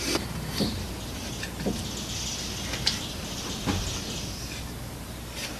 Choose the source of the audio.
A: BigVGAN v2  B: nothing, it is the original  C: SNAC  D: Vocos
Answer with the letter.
B